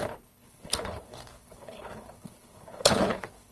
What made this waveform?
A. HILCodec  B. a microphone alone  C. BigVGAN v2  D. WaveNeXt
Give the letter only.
A